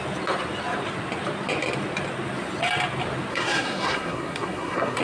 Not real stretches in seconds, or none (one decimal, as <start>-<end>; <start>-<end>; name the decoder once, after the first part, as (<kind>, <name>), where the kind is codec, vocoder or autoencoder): 3.3-5.0 (codec, SNAC)